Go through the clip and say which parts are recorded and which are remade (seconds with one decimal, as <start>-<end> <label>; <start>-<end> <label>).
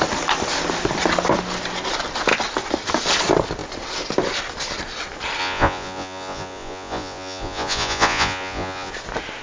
0.0-5.4 recorded; 5.4-8.9 remade; 8.9-9.4 recorded